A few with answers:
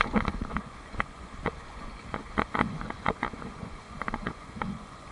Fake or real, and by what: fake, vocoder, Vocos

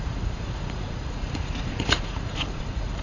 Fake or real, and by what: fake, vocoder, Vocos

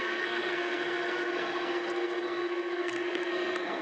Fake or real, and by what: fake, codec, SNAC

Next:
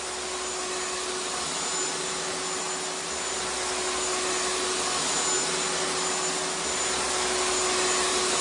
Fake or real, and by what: real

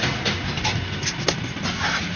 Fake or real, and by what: real